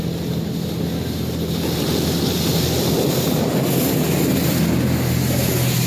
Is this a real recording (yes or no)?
yes